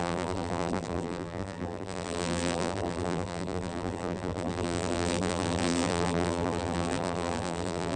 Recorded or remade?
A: remade